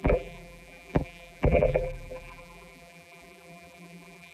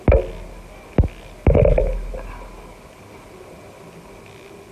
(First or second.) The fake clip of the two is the first